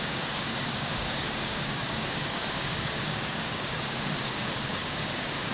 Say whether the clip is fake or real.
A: fake